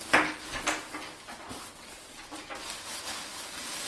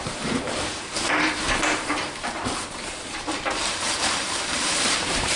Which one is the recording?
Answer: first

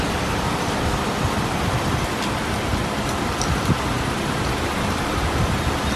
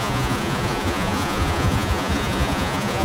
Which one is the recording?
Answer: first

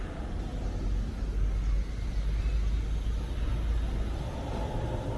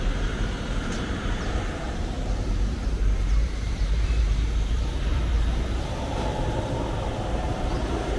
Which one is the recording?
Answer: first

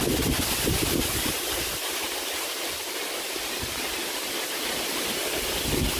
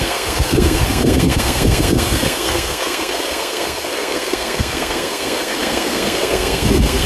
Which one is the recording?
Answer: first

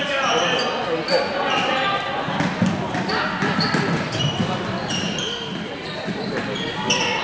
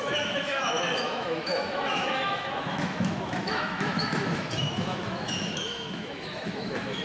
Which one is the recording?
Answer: first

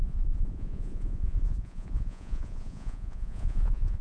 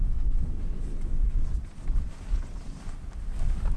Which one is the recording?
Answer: second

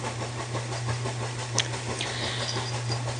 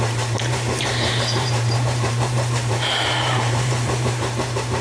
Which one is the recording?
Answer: first